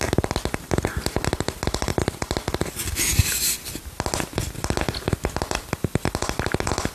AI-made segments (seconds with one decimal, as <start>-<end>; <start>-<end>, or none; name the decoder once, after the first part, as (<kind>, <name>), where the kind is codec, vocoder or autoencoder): 0.0-1.5 (vocoder, BigVGAN v2)